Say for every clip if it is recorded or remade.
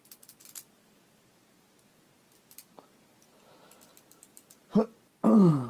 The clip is recorded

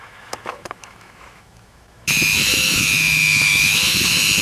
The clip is remade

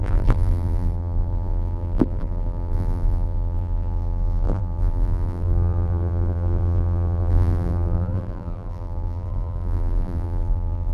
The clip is remade